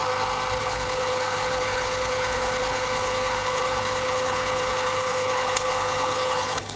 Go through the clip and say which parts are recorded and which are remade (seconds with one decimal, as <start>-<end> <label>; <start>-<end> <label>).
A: 0.0-0.6 recorded; 0.6-6.8 remade